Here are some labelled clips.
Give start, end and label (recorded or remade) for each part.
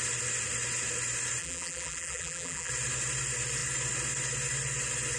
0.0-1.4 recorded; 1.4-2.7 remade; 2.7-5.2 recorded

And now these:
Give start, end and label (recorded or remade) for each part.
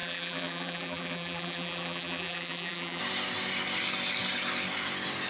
0.0-3.0 remade; 3.0-5.3 recorded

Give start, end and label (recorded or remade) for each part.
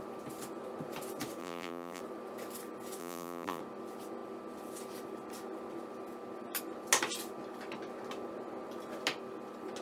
0.0-1.4 recorded; 1.4-2.0 remade; 2.0-3.0 recorded; 3.0-3.6 remade; 3.6-9.8 recorded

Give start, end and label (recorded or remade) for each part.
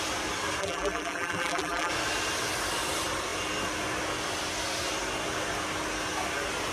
0.0-0.6 recorded; 0.6-1.9 remade; 1.9-6.7 recorded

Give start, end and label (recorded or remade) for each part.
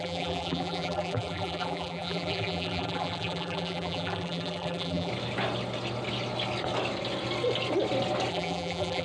0.0-5.1 remade; 5.1-8.3 recorded; 8.3-9.0 remade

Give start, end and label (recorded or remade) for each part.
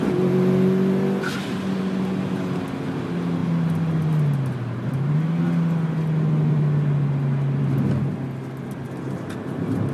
0.0-9.9 recorded